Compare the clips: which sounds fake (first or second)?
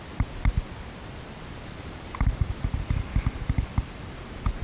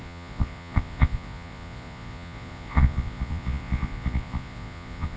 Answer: second